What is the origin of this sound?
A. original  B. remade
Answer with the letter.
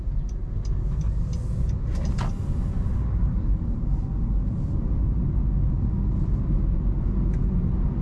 A